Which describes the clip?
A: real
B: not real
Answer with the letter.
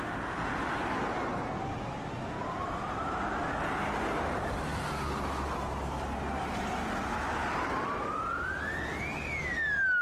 A